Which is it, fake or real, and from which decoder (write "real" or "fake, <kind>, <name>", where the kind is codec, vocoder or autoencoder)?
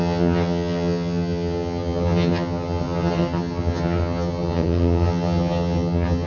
fake, vocoder, HiFi-GAN